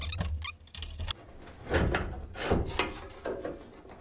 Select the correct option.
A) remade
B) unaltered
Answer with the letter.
B